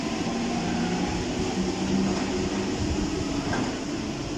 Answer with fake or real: real